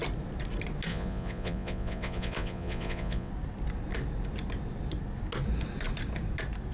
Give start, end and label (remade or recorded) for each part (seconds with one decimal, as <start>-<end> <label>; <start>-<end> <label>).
0.0-0.9 recorded; 0.9-3.3 remade; 3.3-6.7 recorded